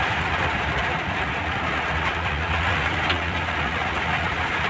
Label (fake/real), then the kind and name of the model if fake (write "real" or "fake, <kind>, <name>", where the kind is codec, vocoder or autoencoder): fake, vocoder, Vocos